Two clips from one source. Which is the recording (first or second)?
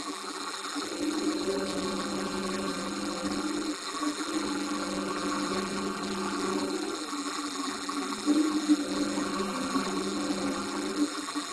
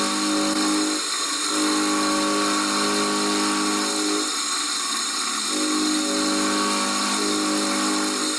second